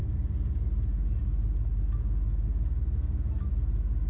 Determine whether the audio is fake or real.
real